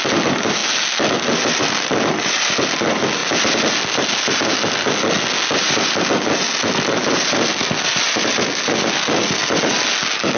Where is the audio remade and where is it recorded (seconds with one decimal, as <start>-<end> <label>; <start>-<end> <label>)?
0.0-10.4 recorded